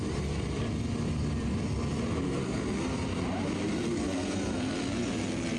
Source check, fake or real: fake